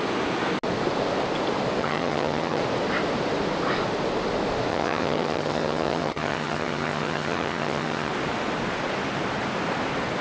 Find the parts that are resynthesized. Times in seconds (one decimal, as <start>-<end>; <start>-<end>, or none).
1.8-2.6; 4.7-8.1